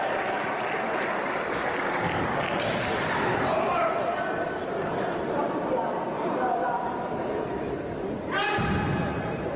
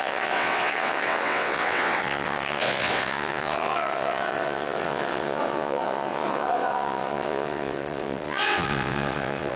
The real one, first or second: first